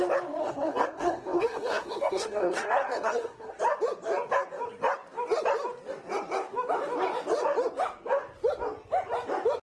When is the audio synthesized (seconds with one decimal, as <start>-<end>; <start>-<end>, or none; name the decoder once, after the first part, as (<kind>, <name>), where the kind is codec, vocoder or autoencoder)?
0.4-3.6 (codec, SNAC)